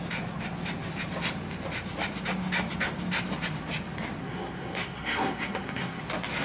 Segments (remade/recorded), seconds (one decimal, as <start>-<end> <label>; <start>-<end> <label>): 0.0-4.2 recorded; 4.2-6.0 remade; 6.0-6.4 recorded